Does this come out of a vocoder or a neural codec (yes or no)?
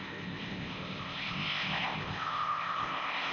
yes